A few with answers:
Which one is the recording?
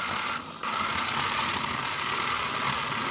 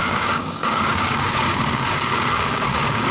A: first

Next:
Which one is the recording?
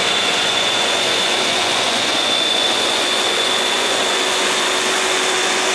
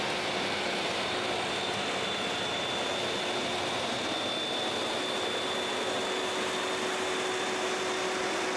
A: second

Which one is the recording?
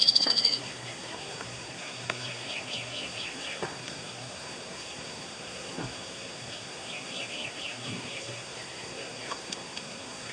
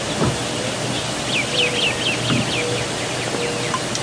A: second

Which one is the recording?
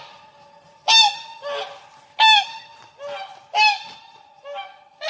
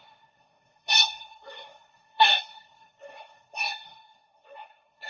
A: first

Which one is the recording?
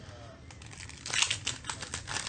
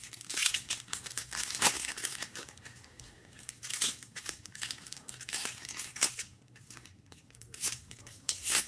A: first